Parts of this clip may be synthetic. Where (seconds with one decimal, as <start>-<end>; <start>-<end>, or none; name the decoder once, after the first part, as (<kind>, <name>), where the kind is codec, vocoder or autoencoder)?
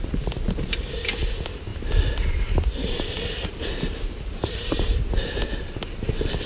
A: none